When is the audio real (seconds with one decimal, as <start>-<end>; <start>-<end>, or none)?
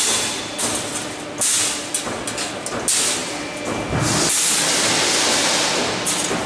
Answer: 0.0-6.5